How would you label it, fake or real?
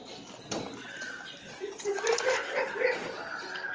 real